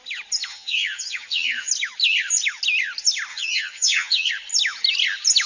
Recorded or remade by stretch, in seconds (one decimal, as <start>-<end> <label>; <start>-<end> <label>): 0.0-0.5 recorded; 0.5-1.7 remade; 1.7-3.3 recorded; 3.3-4.3 remade; 4.3-5.5 recorded